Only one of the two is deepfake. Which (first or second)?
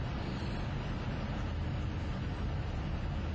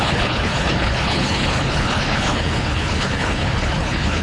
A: second